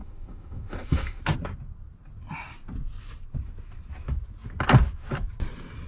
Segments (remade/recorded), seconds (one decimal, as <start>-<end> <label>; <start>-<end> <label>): 0.0-1.2 remade; 1.2-5.9 recorded